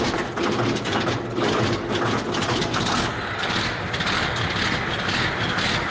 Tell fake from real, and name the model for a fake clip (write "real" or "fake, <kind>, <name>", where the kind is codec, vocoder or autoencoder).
real